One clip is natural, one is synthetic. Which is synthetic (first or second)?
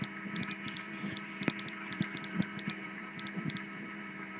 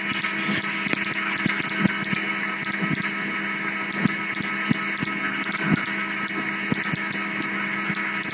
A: first